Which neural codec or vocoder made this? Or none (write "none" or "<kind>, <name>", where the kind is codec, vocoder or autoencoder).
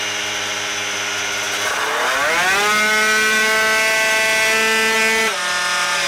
none